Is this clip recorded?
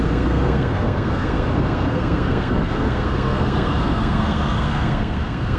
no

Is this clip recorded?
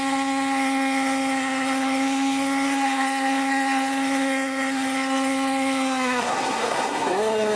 no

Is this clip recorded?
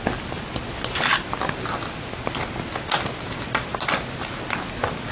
yes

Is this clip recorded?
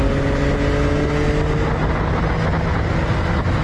yes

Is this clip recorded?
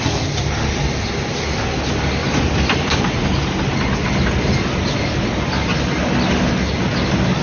yes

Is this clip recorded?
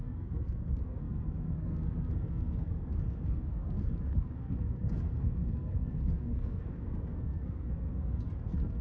no